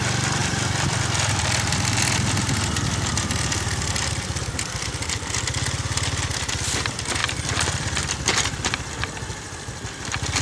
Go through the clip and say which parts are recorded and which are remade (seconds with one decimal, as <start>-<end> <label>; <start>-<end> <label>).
0.0-0.4 recorded; 0.4-1.0 remade; 1.0-3.1 recorded; 3.1-4.5 remade; 4.5-7.2 recorded; 7.2-8.1 remade; 8.1-10.4 recorded